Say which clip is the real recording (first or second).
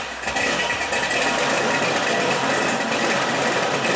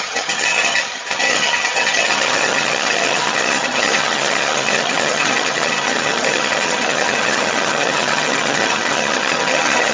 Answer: first